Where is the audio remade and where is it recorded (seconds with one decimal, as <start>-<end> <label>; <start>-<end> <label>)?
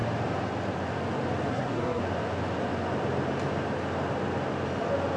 0.0-1.5 recorded; 1.5-2.0 remade; 2.0-5.2 recorded